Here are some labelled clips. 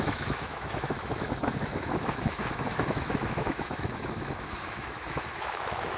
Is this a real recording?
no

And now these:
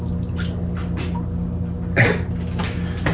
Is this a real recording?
yes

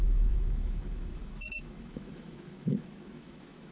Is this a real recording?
no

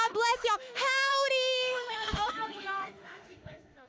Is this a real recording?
no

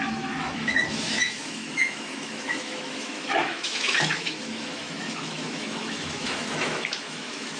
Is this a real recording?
no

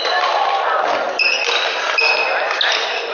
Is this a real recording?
yes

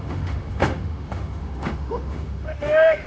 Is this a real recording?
no